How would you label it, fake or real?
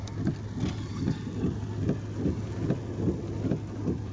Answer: real